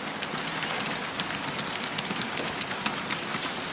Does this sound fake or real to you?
fake